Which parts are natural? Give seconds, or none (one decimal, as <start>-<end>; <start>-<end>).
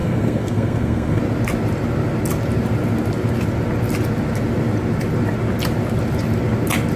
1.2-7.0